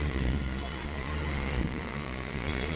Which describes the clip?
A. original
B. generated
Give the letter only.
B